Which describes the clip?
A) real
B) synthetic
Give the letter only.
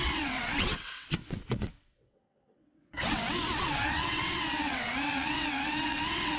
B